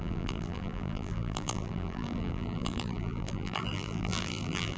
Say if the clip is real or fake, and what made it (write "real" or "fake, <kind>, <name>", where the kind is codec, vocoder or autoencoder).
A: fake, vocoder, BigVGAN v2